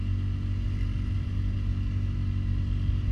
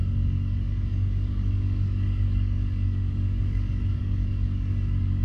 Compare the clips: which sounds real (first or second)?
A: first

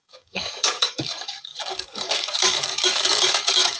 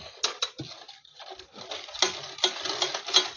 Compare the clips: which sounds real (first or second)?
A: second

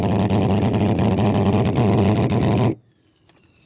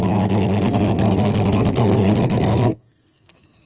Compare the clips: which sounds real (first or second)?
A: first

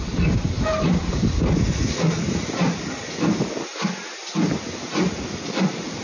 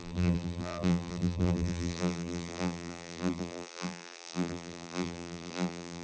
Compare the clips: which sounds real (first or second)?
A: first